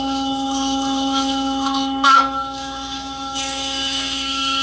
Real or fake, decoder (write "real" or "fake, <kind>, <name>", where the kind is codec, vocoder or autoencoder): fake, autoencoder, DAC-VAE